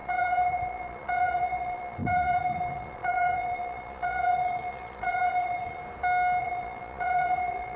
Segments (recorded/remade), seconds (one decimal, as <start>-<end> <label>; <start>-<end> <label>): 0.0-5.8 remade; 5.8-6.4 recorded; 6.4-7.8 remade